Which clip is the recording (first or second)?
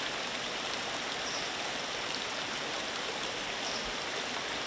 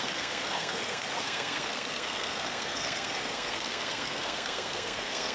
first